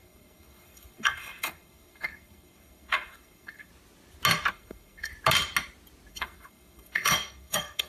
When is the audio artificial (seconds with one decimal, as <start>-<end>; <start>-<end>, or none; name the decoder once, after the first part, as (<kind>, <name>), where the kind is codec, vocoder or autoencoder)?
0.0-3.7 (codec, SNAC); 4.5-5.1; 6.1-7.9